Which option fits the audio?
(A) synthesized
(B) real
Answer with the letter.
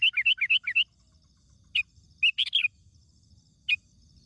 B